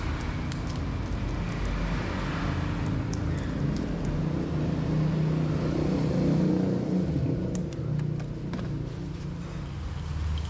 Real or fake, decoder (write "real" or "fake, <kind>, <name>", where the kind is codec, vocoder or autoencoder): real